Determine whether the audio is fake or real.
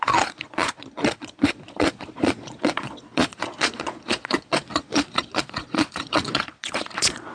fake